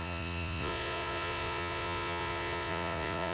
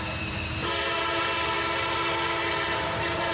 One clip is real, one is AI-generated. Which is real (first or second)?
second